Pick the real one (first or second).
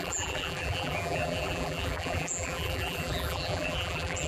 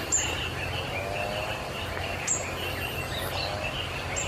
second